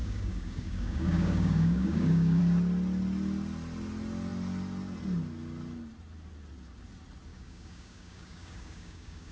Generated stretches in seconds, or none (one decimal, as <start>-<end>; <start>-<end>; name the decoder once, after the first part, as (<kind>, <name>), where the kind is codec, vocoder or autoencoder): 0.0-2.4 (codec, DAC); 7.3-9.3